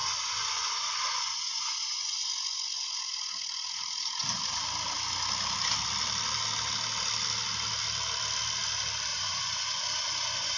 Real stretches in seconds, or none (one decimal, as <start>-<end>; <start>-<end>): 3.7-9.1